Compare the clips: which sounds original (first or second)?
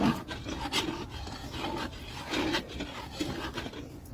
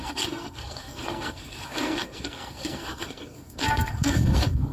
first